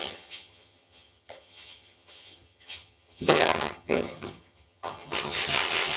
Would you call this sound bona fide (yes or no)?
no